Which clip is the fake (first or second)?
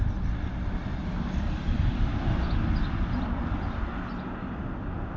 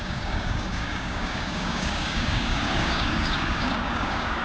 second